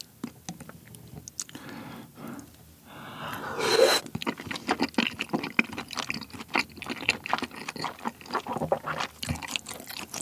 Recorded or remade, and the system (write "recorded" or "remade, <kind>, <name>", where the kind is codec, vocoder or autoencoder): recorded